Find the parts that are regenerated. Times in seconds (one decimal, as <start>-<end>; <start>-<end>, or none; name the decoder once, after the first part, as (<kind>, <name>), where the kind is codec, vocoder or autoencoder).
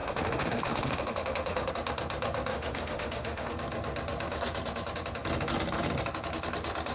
0.0-1.7 (autoencoder, DAC-VAE); 2.5-3.5